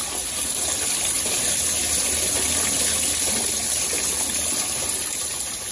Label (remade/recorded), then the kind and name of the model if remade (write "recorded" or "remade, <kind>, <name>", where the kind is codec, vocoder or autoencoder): recorded